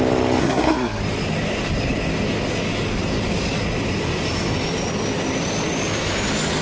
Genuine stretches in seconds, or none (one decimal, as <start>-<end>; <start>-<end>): 0.0-0.4; 1.0-6.6